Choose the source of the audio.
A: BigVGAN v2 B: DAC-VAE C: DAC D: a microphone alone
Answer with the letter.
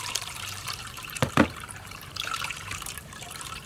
A